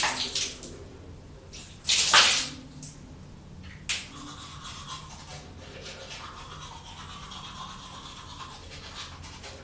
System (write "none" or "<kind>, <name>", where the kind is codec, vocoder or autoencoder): none